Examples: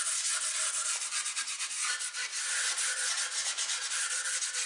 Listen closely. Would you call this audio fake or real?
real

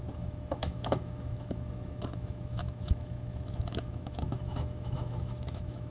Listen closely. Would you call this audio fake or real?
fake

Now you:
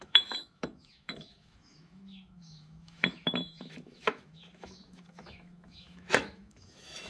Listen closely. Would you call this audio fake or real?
fake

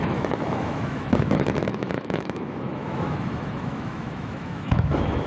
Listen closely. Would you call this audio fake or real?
fake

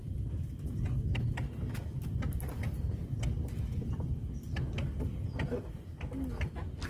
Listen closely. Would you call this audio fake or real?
real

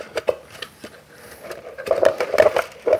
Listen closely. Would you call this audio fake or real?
real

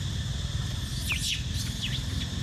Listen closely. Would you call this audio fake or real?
real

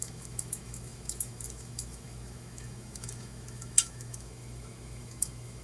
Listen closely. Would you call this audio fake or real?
fake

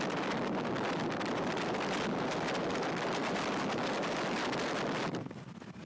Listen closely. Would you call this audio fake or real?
real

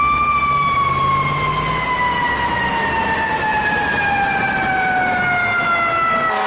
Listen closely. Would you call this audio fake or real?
real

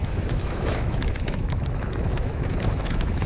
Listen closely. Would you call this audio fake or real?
fake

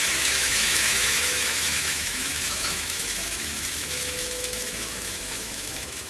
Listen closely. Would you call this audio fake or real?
fake